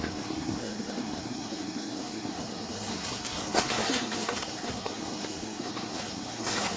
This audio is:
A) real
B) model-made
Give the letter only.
B